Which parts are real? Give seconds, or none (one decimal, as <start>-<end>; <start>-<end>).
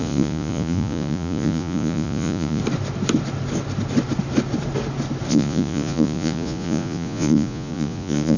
2.6-5.3